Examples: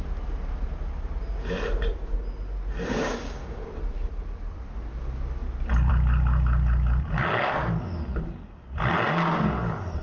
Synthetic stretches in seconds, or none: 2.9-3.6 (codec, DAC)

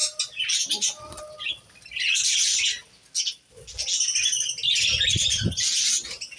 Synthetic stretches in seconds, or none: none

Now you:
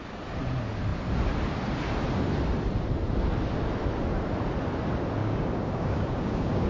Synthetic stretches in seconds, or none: 5.2-6.7 (codec, DAC)